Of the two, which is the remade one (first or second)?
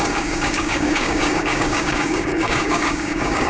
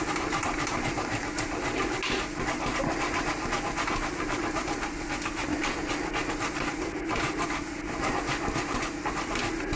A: first